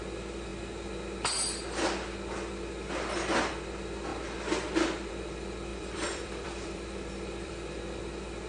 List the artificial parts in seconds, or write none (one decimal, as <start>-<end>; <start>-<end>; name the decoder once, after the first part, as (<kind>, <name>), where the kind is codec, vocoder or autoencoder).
5.7-7.8 (vocoder, BigVGAN v2)